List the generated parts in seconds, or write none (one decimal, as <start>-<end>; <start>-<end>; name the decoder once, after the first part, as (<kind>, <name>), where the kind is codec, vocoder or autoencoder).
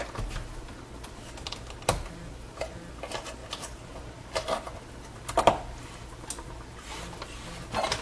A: none